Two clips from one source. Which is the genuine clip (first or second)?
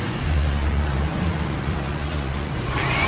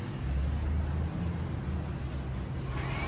second